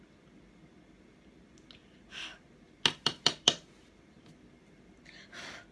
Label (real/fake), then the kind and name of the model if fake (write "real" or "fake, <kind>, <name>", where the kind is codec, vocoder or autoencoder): real